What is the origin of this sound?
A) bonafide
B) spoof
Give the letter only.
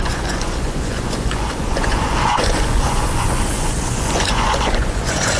B